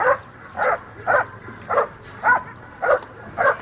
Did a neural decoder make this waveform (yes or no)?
no